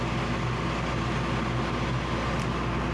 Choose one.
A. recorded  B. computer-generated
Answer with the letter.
A